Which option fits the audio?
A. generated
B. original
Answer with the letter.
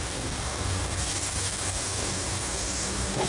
A